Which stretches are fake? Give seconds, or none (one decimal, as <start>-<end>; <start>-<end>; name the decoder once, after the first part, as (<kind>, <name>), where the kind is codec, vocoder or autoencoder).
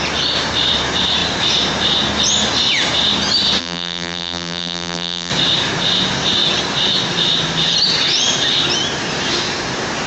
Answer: 3.6-5.3 (vocoder, BigVGAN v2)